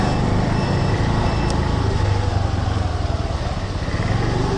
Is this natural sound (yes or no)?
yes